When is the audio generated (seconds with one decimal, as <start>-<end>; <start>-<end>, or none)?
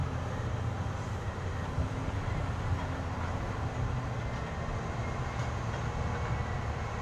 0.0-4.2; 4.7-5.6